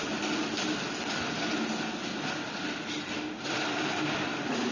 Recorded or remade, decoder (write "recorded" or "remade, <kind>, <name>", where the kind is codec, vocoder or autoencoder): recorded